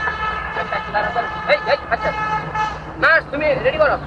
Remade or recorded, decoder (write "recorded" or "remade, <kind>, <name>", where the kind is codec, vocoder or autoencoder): recorded